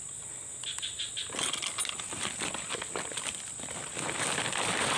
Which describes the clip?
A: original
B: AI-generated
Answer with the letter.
A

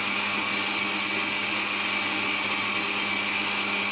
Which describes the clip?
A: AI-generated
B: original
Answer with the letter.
B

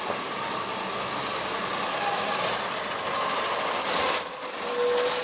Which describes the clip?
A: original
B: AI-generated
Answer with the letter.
A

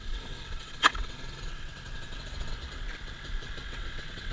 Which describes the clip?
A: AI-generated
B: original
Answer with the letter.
A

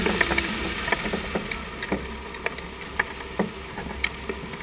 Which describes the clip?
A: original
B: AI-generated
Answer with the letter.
A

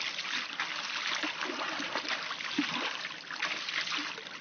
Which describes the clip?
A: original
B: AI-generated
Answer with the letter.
A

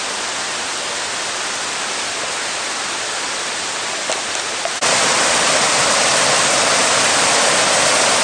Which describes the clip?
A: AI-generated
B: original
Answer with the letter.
B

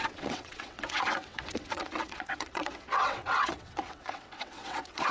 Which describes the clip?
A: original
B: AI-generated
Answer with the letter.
B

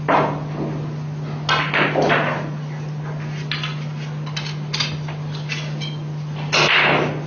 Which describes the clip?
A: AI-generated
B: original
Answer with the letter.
B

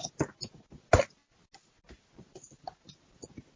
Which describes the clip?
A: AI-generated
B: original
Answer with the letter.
B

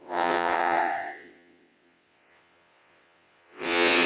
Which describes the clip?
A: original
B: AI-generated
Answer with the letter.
B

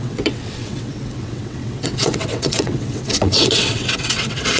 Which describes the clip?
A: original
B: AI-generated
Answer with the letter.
B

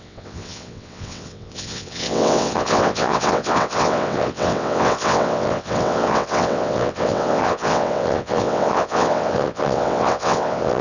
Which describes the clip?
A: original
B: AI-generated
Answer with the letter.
B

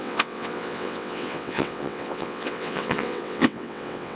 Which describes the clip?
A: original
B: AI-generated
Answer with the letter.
B